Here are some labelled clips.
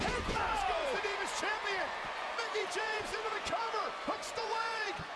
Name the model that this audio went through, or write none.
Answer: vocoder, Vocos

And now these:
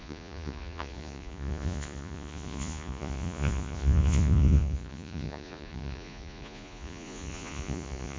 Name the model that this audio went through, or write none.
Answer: vocoder, Vocos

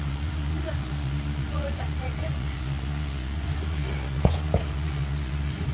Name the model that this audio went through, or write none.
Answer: vocoder, Vocos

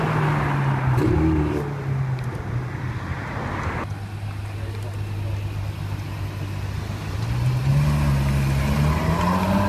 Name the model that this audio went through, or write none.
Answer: none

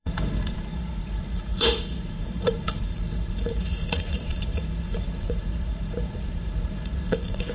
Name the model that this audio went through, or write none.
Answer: vocoder, Vocos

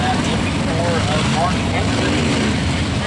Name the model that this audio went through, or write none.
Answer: none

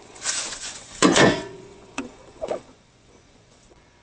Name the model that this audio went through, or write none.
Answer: vocoder, Vocos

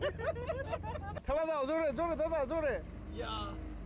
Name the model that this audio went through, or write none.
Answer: none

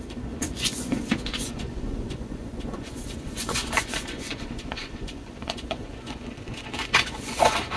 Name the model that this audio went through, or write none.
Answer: vocoder, Vocos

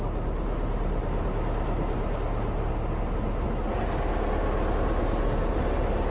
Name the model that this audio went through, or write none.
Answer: none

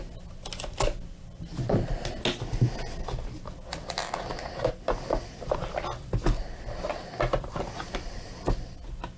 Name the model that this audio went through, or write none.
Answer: none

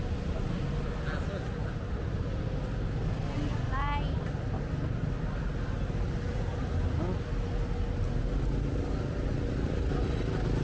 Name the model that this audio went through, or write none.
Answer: none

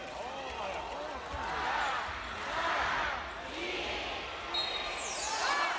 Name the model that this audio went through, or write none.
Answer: none